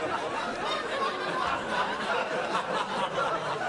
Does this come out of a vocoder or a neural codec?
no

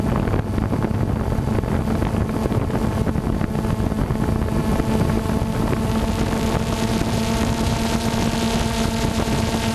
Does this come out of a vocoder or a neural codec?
no